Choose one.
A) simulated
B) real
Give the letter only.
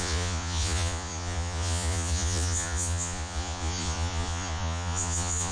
A